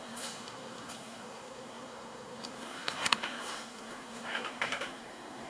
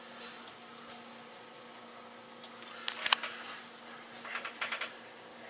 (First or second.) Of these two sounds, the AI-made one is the first